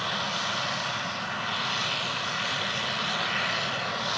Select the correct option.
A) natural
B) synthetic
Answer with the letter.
A